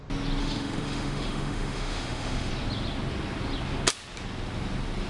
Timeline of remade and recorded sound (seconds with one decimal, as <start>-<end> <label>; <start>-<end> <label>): 0.0-0.4 recorded; 0.4-2.5 remade; 2.5-5.1 recorded